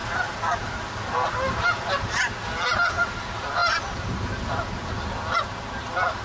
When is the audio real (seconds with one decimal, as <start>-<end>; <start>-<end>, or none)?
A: 0.0-6.2